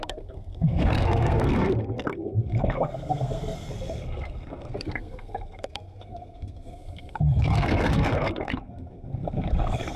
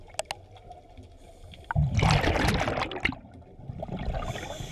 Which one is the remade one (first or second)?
first